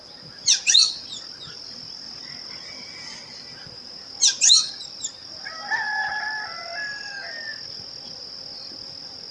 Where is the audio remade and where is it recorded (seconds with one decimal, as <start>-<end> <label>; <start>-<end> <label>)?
0.0-9.3 recorded